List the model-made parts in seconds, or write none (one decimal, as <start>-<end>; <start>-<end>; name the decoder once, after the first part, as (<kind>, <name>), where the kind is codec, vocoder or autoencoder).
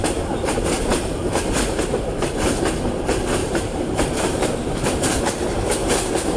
0.0-5.8 (vocoder, BigVGAN v2)